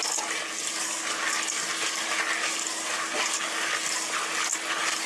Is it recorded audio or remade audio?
recorded